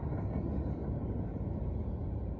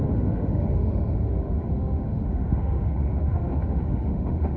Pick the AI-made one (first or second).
second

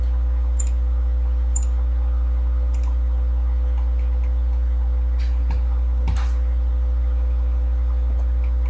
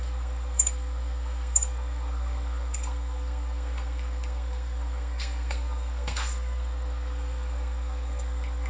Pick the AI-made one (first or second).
second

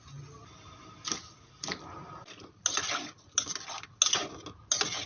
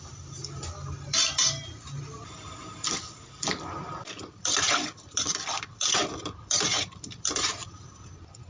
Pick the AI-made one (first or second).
second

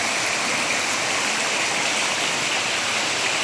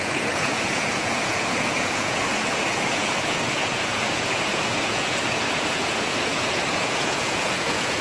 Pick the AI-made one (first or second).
second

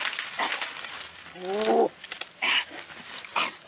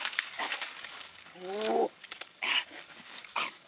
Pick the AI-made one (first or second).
second